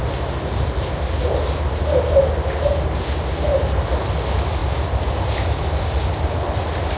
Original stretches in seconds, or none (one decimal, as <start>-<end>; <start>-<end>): 0.0-7.0